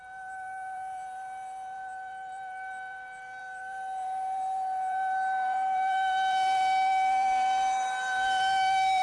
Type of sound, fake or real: fake